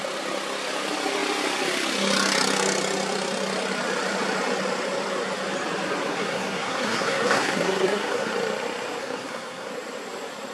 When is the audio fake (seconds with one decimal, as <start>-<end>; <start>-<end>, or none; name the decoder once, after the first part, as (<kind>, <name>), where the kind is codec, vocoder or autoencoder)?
6.1-8.3 (codec, SNAC); 9.0-9.7